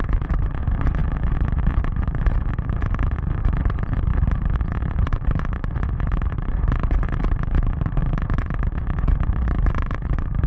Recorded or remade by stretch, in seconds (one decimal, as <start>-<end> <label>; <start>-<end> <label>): 0.0-10.5 remade